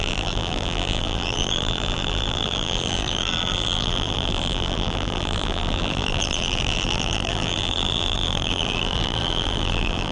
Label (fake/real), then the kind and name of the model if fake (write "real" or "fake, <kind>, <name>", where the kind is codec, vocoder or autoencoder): fake, vocoder, BigVGAN v2